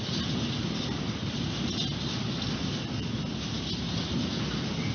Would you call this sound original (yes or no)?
yes